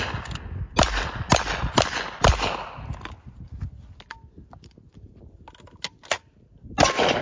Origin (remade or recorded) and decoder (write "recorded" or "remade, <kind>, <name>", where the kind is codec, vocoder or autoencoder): recorded